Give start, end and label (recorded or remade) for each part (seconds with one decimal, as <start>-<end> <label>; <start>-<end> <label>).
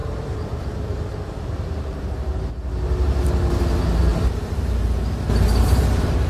0.0-2.5 remade; 2.5-4.1 recorded; 4.1-6.3 remade